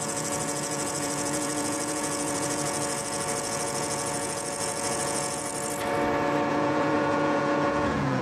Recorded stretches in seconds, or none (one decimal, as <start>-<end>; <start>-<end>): 5.5-6.5